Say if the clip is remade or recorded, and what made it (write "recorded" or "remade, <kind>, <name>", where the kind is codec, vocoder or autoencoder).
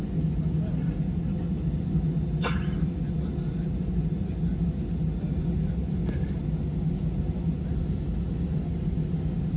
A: recorded